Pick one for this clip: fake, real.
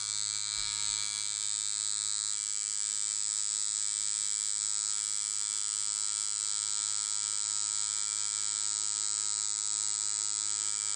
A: real